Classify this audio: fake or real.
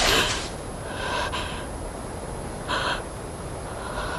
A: real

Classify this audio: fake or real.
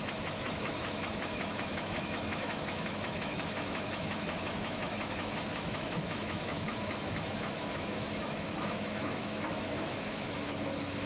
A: fake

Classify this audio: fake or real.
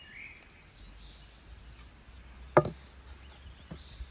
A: real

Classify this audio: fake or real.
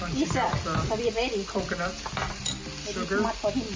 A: real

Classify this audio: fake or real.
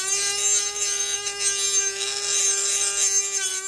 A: real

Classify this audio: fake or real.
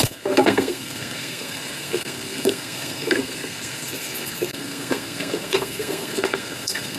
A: fake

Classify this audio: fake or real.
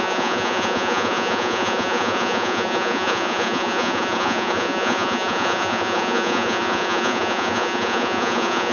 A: fake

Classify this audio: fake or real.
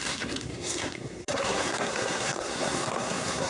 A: fake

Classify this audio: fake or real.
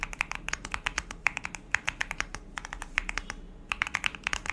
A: fake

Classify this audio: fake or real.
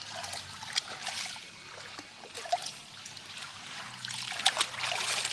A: real